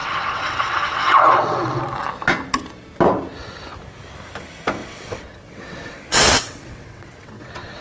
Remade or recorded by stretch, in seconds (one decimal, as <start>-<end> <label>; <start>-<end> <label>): 0.0-1.8 remade; 1.8-4.8 recorded; 4.8-7.8 remade